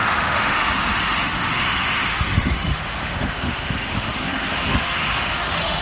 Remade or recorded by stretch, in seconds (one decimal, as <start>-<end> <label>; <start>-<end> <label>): 0.0-5.8 remade